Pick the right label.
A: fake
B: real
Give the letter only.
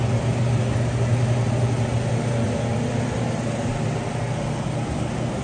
B